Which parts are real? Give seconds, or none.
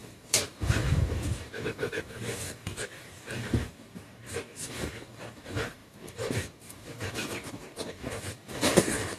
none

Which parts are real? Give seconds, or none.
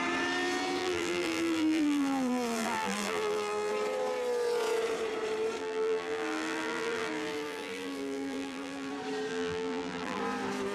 0.0-0.8; 3.7-5.6; 8.9-9.3; 10.2-10.7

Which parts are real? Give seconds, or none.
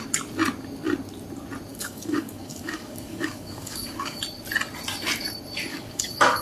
0.0-1.7; 4.2-5.7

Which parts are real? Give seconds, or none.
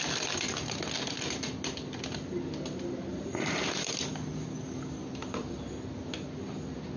0.0-3.1; 3.9-5.2; 5.7-7.0